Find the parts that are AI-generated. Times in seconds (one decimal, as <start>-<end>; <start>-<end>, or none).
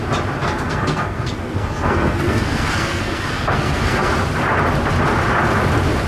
0.4-4.1